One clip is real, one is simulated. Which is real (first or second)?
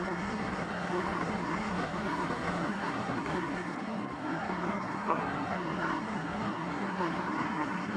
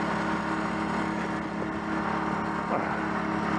second